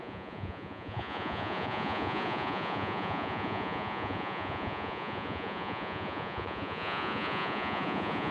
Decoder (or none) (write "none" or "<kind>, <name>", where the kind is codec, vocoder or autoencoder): vocoder, Vocos